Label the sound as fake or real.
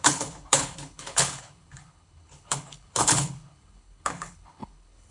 fake